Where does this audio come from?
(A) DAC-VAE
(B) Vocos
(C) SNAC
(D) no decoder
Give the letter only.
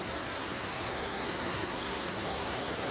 C